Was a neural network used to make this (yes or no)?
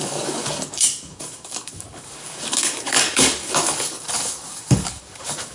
yes